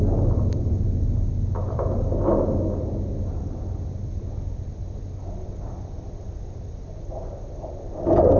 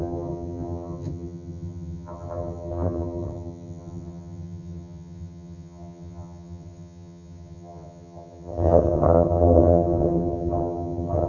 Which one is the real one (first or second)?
first